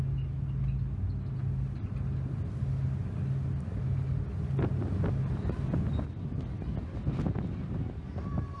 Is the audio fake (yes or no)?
no